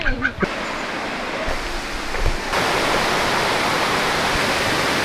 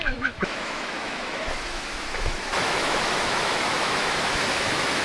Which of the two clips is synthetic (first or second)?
second